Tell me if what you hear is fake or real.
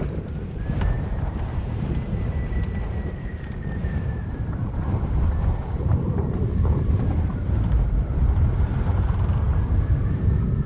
fake